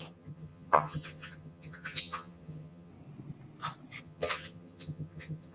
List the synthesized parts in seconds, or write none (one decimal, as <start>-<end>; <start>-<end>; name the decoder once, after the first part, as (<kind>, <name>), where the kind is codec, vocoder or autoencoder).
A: 0.0-2.9 (vocoder, HiFi-GAN); 4.0-5.5